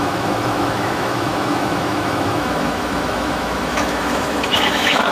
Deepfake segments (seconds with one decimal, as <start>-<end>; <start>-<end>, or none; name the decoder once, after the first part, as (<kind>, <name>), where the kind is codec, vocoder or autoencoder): 0.0-5.1 (autoencoder, DAC-VAE)